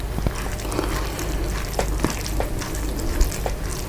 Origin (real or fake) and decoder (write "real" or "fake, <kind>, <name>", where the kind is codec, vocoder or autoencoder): real